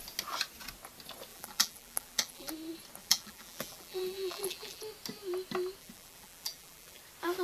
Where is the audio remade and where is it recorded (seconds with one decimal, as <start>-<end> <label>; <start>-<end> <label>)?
0.0-1.3 recorded; 1.3-2.5 remade; 2.5-3.0 recorded; 3.0-4.8 remade; 4.8-5.8 recorded; 5.8-7.0 remade; 7.0-7.4 recorded